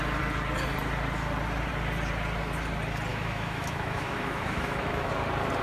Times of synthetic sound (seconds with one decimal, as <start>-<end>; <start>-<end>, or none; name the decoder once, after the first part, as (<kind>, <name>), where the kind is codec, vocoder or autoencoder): 3.1-5.1 (autoencoder, DAC-VAE)